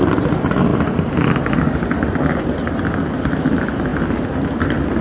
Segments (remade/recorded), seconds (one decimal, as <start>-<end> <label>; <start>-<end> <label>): 0.0-5.0 recorded